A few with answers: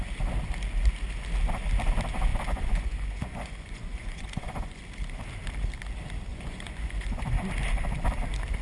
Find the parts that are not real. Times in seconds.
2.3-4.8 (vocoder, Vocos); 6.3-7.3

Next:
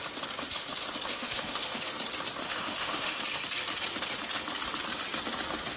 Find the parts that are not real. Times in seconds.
1.1-1.8 (autoencoder, DAC-VAE); 2.4-3.2